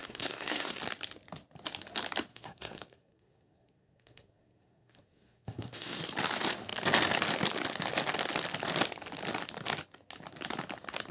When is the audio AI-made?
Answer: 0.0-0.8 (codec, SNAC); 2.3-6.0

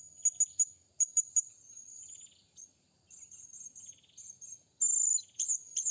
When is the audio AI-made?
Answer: none

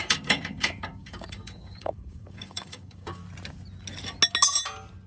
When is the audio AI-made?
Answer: 0.0-3.2 (codec, DAC)

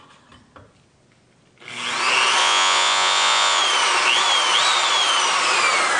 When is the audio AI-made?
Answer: 2.4-3.6 (vocoder, Vocos)

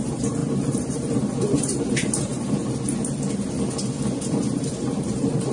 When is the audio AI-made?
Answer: 0.0-2.3 (vocoder, BigVGAN v2); 4.4-5.5